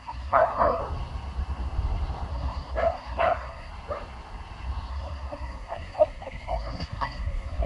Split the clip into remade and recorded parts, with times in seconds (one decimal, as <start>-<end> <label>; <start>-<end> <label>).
0.0-0.8 remade; 0.8-2.3 recorded; 2.3-3.7 remade; 3.7-4.9 recorded; 4.9-7.7 remade